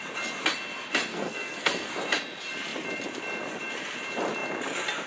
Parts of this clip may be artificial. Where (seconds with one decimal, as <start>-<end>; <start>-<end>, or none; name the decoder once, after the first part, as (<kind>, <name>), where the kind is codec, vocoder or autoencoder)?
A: 1.1-1.9 (codec, SNAC)